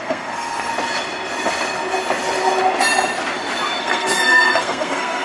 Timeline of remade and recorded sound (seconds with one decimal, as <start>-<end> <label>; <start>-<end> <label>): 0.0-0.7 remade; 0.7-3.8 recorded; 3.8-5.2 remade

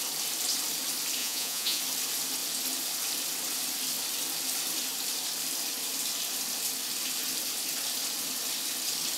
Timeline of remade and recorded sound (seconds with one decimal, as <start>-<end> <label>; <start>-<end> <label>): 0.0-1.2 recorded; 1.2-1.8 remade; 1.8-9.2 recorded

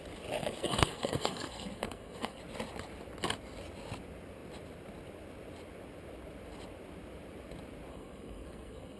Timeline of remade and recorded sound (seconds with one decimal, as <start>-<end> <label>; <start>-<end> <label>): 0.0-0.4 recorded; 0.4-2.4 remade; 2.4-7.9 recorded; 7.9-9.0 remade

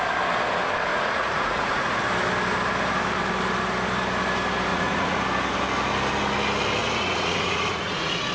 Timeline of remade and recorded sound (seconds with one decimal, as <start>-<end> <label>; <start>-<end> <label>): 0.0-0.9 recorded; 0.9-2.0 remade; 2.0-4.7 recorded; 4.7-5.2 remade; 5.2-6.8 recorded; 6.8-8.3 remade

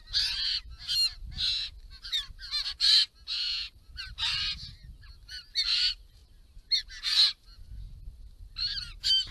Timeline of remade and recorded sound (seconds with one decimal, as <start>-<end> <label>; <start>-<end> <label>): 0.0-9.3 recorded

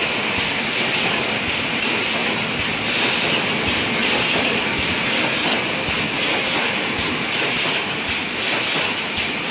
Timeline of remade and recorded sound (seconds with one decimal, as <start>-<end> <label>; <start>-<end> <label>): 0.0-9.5 recorded

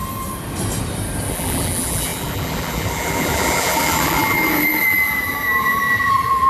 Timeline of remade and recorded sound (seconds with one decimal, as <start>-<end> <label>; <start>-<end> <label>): 0.0-1.3 recorded; 1.3-6.5 remade

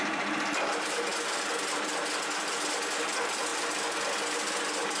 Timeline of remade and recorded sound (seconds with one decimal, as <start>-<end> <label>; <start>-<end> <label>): 0.0-5.0 recorded